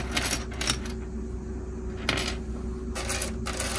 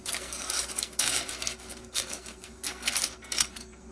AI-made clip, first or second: second